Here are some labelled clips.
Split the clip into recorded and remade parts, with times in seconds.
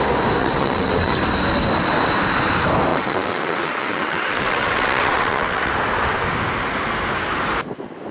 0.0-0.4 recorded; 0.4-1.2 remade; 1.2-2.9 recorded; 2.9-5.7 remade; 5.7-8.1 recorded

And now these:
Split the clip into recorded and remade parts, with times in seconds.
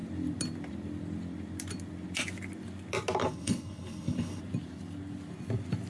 0.0-3.2 recorded; 3.2-4.4 remade; 4.4-5.9 recorded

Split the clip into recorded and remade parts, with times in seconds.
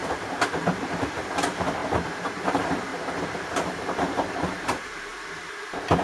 0.0-1.1 recorded; 1.1-1.8 remade; 1.8-2.4 recorded; 2.4-2.9 remade; 2.9-3.4 recorded; 3.4-6.0 remade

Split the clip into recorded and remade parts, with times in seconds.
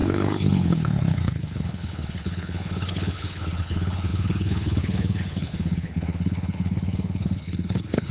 0.0-8.1 remade